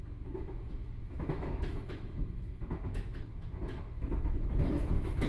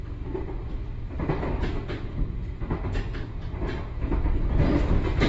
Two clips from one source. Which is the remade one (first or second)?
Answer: first